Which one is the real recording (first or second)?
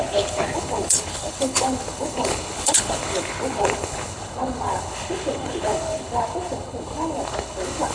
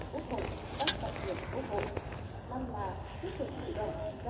second